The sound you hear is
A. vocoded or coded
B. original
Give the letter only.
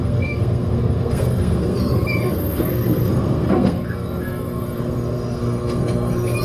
A